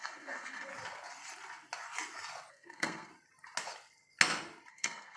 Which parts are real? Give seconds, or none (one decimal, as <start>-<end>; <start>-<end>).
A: 0.7-2.5; 3.1-4.7